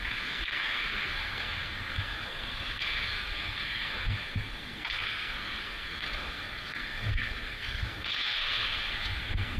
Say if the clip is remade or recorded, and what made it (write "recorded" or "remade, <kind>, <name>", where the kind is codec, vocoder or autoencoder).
remade, codec, SNAC